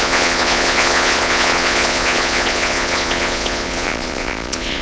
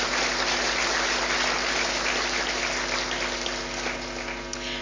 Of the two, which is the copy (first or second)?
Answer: first